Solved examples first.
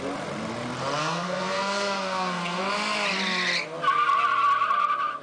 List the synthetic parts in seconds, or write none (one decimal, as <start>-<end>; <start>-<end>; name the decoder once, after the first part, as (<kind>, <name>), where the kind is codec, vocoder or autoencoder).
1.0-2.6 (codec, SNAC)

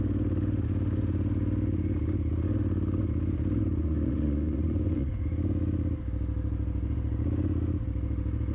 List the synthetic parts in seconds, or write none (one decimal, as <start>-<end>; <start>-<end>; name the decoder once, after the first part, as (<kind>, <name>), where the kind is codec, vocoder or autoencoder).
3.8-5.1 (vocoder, Vocos)

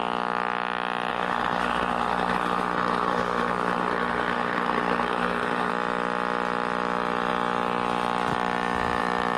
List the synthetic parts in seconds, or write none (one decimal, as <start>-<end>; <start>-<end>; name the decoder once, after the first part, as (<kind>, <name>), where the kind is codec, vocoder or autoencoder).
1.1-5.7 (codec, SNAC)

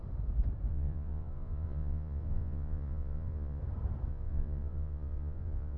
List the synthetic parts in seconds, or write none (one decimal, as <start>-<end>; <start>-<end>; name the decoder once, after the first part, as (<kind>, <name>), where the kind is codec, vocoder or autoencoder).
0.7-3.6 (vocoder, Vocos); 4.1-5.8